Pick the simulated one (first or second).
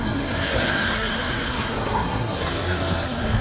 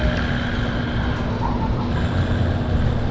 first